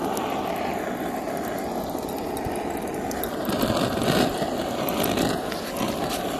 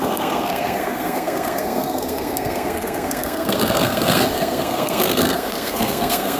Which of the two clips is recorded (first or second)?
first